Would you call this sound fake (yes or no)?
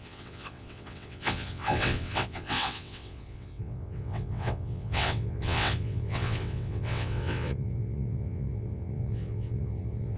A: yes